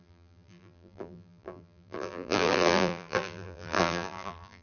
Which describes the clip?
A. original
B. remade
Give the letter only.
B